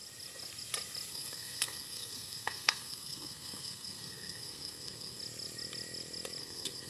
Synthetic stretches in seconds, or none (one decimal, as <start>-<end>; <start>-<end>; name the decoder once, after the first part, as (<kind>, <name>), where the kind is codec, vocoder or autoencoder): 1.1-5.2 (codec, SNAC); 6.4-6.9